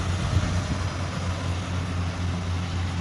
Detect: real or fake real